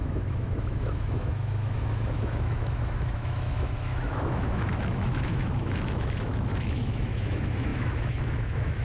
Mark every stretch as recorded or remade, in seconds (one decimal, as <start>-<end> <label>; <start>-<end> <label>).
0.0-8.8 remade